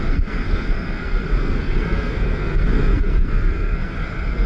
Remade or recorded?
remade